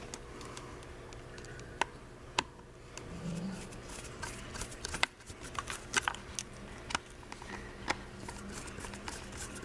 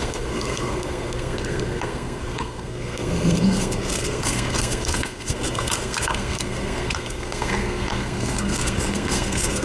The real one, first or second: first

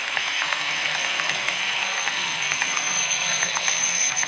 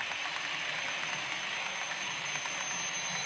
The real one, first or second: second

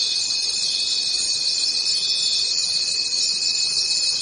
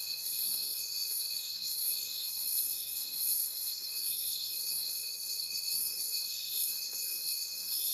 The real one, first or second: first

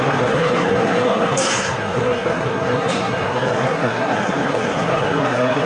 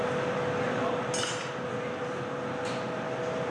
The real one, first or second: second